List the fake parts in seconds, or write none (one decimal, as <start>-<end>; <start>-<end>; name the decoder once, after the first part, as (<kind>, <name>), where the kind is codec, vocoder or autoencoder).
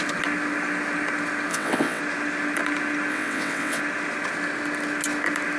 1.5-2.0 (vocoder, WaveNeXt); 3.1-3.8